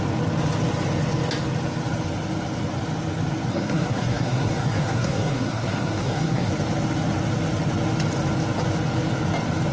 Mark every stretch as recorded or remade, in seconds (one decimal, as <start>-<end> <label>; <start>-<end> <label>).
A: 0.0-3.5 recorded; 3.5-6.5 remade; 6.5-9.7 recorded

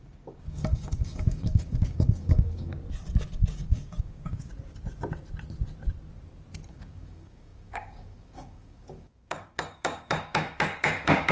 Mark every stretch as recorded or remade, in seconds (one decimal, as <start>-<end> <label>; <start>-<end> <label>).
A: 0.0-2.7 remade; 2.7-3.5 recorded; 3.5-4.5 remade; 4.5-6.7 recorded; 6.7-11.3 remade

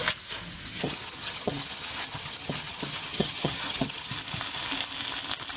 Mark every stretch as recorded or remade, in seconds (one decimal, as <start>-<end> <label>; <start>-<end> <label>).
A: 0.0-0.7 recorded; 0.7-4.1 remade; 4.1-5.6 recorded

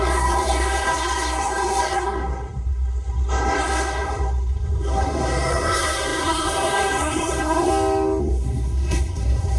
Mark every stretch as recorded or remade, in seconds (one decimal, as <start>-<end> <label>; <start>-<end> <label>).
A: 0.0-7.7 remade; 7.7-8.2 recorded; 8.2-9.6 remade